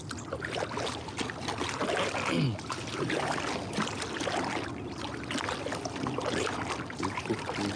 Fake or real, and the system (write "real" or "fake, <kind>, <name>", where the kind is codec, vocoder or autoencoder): real